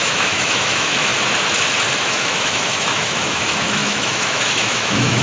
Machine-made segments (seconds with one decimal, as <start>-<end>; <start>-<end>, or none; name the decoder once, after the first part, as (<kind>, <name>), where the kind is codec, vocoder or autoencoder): 0.0-1.1 (autoencoder, DAC-VAE); 2.0-5.2